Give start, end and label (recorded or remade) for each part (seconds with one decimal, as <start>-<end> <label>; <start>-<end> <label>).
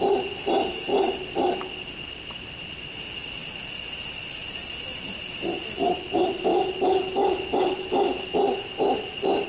0.0-0.9 recorded; 0.9-1.9 remade; 1.9-9.5 recorded